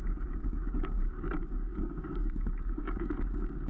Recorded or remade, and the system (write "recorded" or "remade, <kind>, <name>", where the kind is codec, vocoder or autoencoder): remade, codec, DAC